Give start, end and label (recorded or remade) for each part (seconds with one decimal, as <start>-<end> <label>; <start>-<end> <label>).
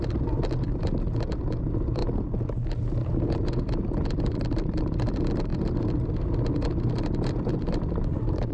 0.0-2.0 remade; 2.0-4.2 recorded; 4.2-5.5 remade; 5.5-7.3 recorded; 7.3-8.5 remade